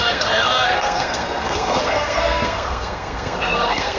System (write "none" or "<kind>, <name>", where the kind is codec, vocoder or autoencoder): codec, SNAC